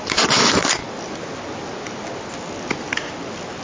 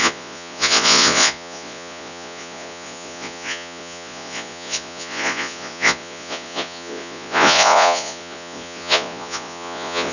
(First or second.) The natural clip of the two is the first